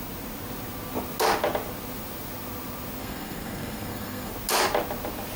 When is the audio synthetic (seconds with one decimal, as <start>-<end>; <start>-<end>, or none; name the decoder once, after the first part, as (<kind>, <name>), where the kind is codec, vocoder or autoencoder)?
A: 3.0-4.3 (codec, SNAC)